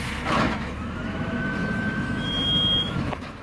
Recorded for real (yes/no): no